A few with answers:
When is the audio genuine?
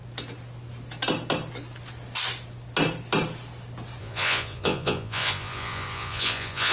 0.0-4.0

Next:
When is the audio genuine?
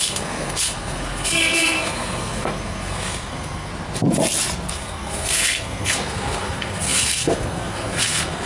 3.7-4.7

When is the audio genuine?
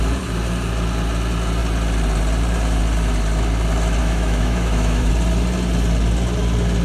0.0-4.0; 5.1-6.8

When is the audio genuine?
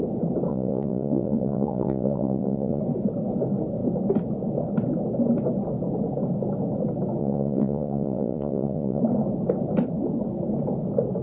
0.0-0.5; 2.8-7.2; 9.0-11.2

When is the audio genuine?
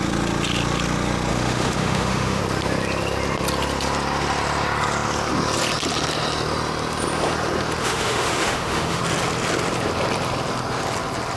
0.0-1.3; 2.4-7.8; 9.0-11.4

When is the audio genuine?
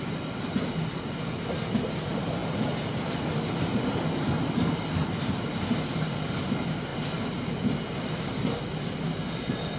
0.0-9.8